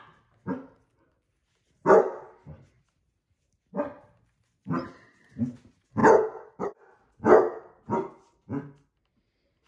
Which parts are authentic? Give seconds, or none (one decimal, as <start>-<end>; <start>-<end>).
0.0-9.7